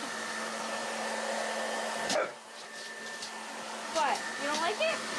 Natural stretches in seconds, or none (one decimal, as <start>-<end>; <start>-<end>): 0.0-5.2